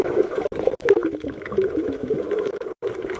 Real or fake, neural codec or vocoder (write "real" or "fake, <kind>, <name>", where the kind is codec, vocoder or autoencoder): fake, autoencoder, DAC-VAE